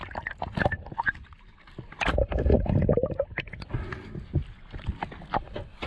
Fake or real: real